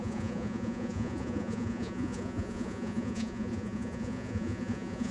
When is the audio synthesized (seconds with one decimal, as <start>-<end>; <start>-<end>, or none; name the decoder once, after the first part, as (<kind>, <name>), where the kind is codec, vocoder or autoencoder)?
0.0-5.1 (vocoder, Vocos)